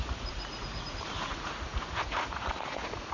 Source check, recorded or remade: remade